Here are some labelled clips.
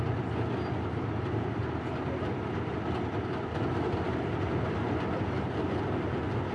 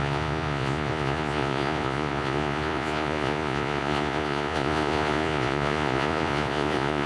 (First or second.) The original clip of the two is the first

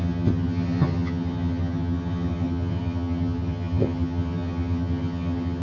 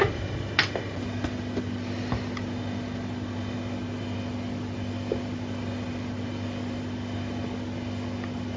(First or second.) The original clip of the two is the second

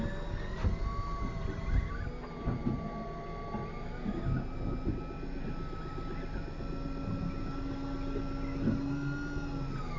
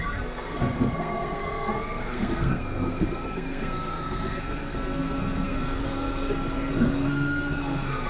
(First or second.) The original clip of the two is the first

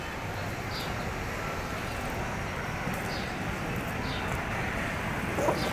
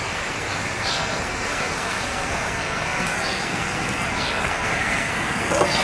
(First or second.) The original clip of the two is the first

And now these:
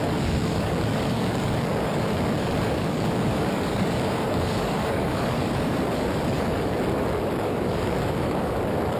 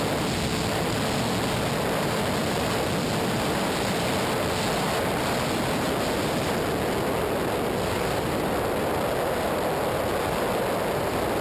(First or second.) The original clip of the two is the second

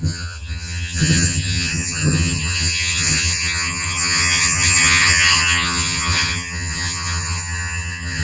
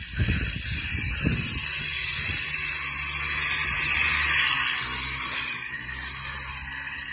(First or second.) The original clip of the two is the second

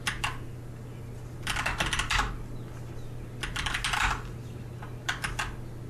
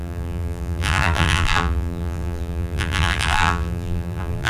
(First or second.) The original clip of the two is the first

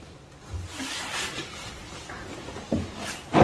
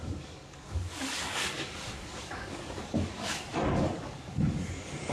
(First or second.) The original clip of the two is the first